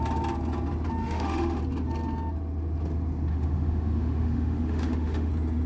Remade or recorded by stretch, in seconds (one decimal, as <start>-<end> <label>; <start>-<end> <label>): 0.0-1.0 recorded; 1.0-1.6 remade; 1.6-3.3 recorded; 3.3-5.3 remade; 5.3-5.7 recorded

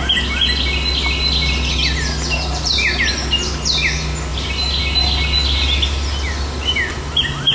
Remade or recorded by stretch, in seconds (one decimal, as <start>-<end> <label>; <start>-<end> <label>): 0.0-7.5 recorded

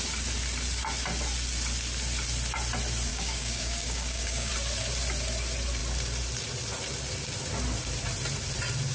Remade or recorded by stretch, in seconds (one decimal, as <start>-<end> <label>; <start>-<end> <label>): 0.0-3.1 recorded; 3.1-4.5 remade; 4.5-8.9 recorded

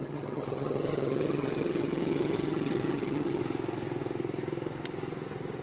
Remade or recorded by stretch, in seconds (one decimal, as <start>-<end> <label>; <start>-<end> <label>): 0.0-3.4 remade; 3.4-5.6 recorded

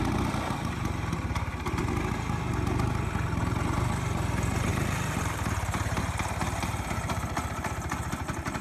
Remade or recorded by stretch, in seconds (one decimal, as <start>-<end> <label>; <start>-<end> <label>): 0.0-4.7 recorded; 4.7-7.7 remade; 7.7-8.6 recorded